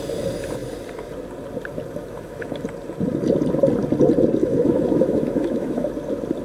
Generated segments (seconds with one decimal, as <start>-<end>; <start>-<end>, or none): 2.0-2.6; 4.4-5.9